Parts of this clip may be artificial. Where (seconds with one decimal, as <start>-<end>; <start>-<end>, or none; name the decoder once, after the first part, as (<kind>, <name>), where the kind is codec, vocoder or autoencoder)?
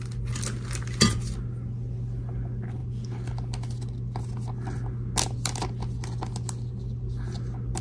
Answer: none